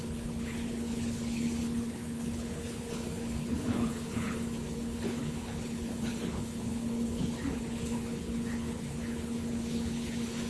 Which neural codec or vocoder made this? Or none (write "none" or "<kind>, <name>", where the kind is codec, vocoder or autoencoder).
codec, HILCodec